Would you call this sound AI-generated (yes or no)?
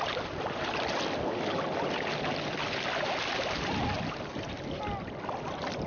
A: no